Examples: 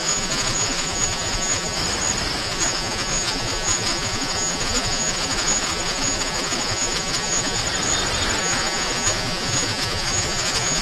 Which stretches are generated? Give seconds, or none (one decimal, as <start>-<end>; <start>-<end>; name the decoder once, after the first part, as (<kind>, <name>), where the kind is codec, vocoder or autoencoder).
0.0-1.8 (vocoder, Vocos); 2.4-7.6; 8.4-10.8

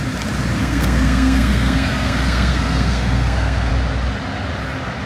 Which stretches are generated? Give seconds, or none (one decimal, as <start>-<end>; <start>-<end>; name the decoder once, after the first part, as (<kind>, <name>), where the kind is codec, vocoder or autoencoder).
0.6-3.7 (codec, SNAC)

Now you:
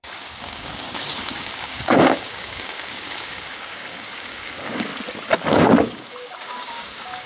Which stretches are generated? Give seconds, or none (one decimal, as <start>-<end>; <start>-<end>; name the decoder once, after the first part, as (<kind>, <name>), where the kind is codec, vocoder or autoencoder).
0.0-4.9 (codec, DAC); 5.5-7.3

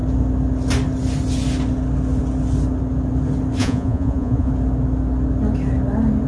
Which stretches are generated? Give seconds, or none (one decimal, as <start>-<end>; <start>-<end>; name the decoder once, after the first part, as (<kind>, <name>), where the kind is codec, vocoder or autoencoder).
3.6-4.5 (vocoder, Vocos)

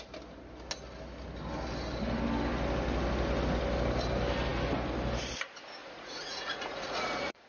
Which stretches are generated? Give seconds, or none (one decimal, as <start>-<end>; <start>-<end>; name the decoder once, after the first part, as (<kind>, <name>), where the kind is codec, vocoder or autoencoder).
5.8-7.5 (vocoder, Vocos)

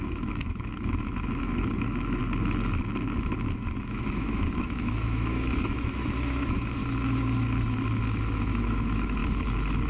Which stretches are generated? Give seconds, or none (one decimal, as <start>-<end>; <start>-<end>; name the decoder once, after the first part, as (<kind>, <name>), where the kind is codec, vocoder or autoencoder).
0.0-2.2 (autoencoder, DAC-VAE); 3.5-6.8; 8.3-9.2

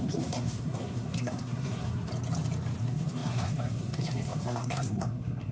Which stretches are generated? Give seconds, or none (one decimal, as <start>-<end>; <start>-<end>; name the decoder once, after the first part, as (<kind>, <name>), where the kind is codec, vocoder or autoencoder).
0.0-2.1 (codec, SNAC); 2.8-5.5